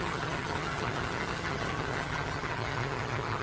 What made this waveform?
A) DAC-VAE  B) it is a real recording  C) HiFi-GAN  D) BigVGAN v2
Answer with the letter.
C